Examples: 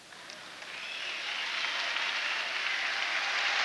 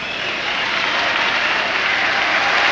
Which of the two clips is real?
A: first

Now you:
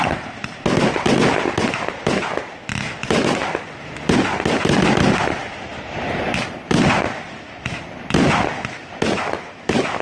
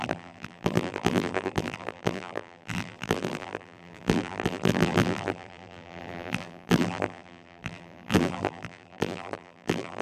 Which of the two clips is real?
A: first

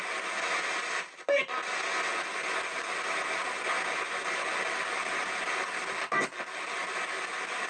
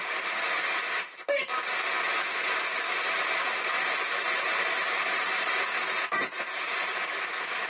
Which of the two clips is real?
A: first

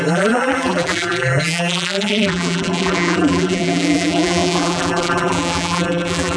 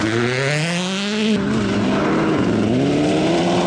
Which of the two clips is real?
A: second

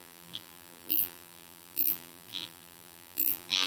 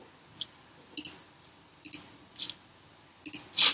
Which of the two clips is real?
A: second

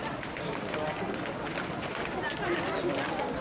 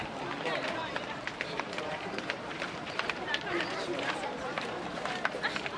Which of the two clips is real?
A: first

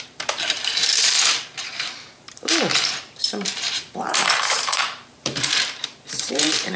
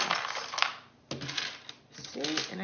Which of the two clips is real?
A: second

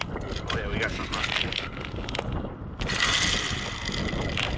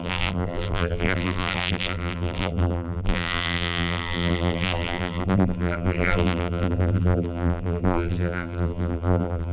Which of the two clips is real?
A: first